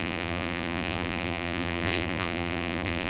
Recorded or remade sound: remade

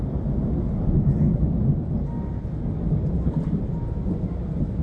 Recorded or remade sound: recorded